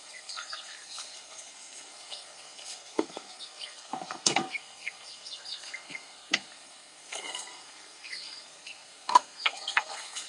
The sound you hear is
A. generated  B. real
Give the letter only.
A